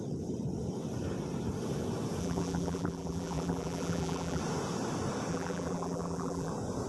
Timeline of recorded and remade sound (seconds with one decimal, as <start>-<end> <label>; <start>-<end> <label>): 0.0-2.2 recorded; 2.2-4.4 remade; 4.4-5.3 recorded; 5.3-6.5 remade; 6.5-6.9 recorded